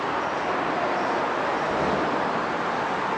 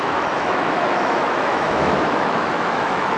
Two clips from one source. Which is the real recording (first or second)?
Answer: first